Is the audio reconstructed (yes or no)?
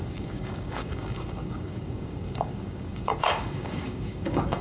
yes